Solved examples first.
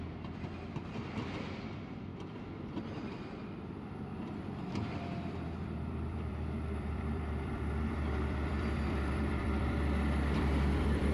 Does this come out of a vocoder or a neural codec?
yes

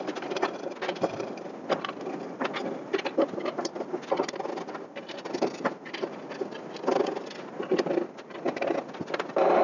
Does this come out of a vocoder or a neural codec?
no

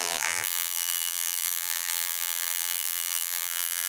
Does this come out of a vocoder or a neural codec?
yes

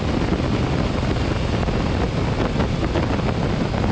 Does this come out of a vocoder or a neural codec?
no